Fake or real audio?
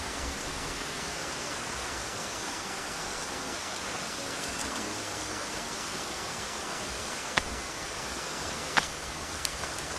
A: fake